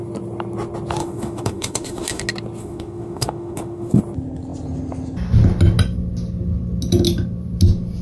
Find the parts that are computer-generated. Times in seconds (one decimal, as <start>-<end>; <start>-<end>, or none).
1.0-2.2; 2.6-4.0